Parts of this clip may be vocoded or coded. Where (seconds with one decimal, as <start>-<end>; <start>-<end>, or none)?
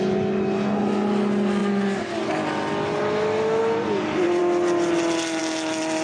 none